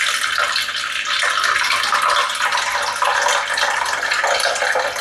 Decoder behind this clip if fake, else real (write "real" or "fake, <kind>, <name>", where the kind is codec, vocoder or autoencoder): real